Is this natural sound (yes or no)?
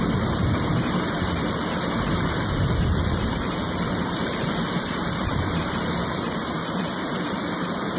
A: no